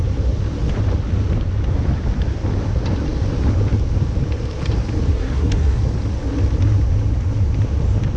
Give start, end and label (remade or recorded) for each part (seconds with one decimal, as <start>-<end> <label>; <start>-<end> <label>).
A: 0.0-5.1 recorded; 5.1-5.8 remade; 5.8-8.2 recorded